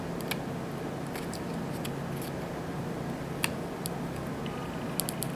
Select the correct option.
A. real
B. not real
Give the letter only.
A